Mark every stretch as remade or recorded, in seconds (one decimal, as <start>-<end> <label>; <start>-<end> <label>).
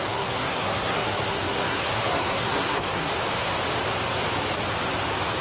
0.0-3.1 remade; 3.1-5.4 recorded